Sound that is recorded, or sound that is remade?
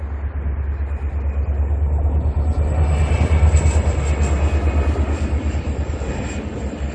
recorded